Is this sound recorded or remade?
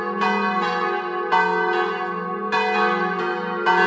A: recorded